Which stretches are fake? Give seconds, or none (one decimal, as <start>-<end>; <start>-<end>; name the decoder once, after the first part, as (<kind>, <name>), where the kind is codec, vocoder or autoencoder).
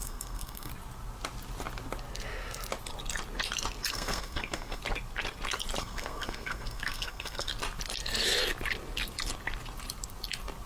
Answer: 0.0-0.7 (codec, SNAC); 3.9-4.8; 5.8-7.5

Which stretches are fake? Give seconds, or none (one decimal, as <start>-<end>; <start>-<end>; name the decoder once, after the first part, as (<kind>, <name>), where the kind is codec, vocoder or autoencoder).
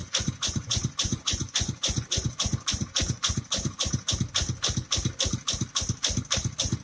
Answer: 0.0-4.1 (vocoder, Vocos)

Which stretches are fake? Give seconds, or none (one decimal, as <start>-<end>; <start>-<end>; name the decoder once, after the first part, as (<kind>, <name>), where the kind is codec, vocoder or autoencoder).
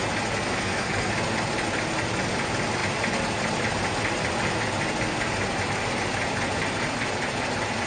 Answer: 0.5-1.1 (codec, SNAC)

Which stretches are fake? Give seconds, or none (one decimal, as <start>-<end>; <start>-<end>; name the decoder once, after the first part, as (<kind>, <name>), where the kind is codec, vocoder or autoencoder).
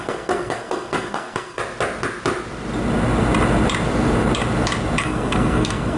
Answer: 0.0-1.6 (codec, SNAC); 5.0-6.0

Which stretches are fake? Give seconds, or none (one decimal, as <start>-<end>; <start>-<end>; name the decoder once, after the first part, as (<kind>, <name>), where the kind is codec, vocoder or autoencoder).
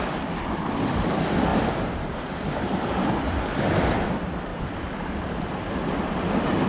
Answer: 1.5-3.1 (vocoder, BigVGAN v2); 4.5-5.6